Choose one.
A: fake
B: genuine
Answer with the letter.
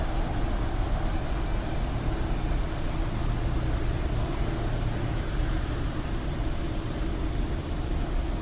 B